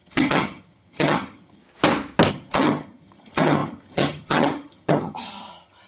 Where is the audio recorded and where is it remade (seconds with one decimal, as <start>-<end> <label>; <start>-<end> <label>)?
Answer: 0.0-1.6 remade; 1.6-2.3 recorded; 2.3-5.9 remade